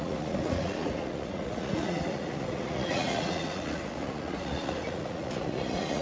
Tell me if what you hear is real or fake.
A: fake